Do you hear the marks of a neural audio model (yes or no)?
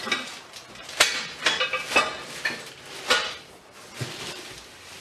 no